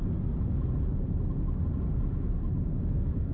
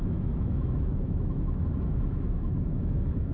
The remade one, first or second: second